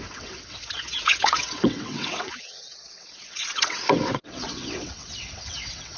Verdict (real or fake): fake